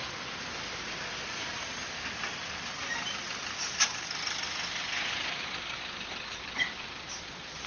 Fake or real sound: real